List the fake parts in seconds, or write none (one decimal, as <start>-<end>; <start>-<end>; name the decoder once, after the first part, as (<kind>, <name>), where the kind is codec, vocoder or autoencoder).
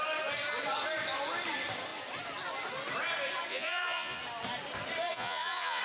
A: 3.5-4.2 (vocoder, Vocos); 5.1-5.8